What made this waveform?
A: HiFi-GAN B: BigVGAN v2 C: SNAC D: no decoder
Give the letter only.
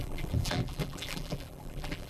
B